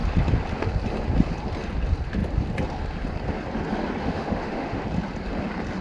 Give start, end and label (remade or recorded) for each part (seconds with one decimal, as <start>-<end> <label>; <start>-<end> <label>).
0.0-4.0 recorded; 4.0-4.8 remade; 4.8-5.8 recorded